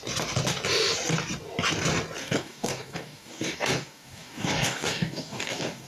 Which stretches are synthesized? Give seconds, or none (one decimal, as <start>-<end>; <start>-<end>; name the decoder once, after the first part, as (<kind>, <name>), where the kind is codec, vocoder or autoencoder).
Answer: 2.2-5.9 (codec, DAC)